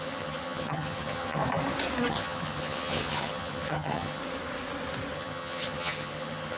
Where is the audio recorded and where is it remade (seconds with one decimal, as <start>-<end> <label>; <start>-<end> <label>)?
0.0-1.4 remade; 1.4-2.1 recorded; 2.1-4.2 remade; 4.2-5.1 recorded; 5.1-6.6 remade